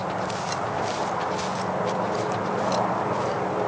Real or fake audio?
real